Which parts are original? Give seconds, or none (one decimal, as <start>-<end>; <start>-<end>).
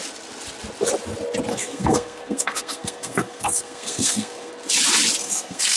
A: 0.0-1.5; 4.5-5.2